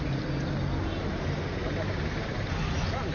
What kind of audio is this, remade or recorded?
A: recorded